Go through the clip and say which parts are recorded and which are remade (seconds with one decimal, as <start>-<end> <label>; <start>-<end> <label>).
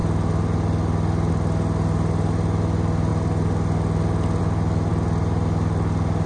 0.0-6.3 recorded